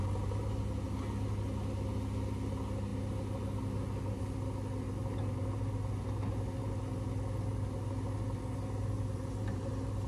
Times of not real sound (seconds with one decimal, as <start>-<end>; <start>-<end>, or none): none